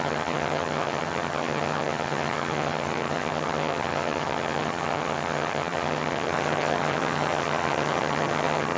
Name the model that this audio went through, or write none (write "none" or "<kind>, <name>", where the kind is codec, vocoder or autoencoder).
vocoder, HiFi-GAN